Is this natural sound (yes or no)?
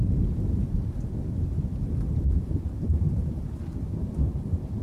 no